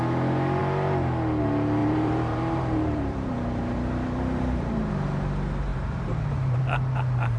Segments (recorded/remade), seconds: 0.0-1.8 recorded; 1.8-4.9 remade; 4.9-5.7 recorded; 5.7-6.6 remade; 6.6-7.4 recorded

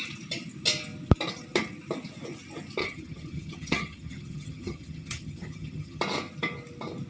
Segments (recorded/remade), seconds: 0.0-2.8 recorded; 2.8-6.0 remade; 6.0-7.1 recorded